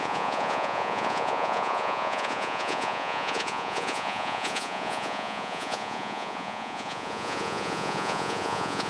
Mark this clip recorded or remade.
remade